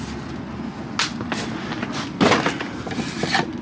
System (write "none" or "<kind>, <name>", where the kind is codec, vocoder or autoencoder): none